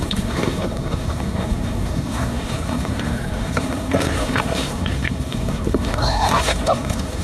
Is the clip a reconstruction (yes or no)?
yes